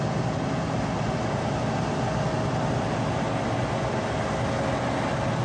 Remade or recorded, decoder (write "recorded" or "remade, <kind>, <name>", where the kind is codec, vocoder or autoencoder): recorded